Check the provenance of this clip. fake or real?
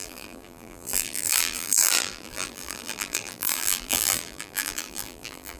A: fake